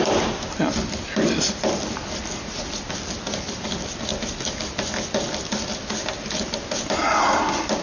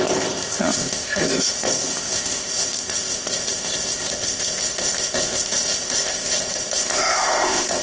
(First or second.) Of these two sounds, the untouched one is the first